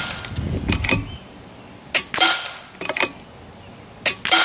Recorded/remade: recorded